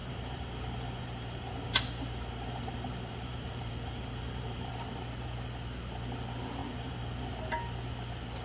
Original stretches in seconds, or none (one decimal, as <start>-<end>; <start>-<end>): 4.7-6.6; 7.2-8.4